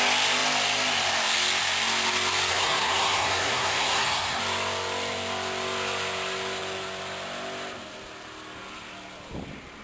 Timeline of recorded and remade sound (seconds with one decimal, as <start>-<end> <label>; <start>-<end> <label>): 0.0-2.5 recorded; 2.5-4.4 remade; 4.4-9.8 recorded